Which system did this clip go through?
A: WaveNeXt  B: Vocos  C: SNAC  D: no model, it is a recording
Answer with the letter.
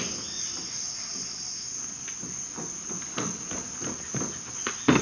D